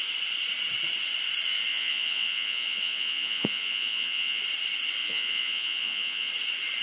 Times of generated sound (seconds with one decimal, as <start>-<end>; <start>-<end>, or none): 1.7-4.4; 5.0-6.3